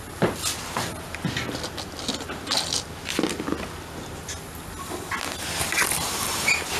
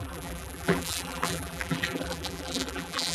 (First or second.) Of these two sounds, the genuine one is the first